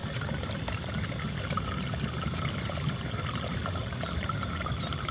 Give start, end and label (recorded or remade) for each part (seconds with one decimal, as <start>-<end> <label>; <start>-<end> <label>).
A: 0.0-5.1 recorded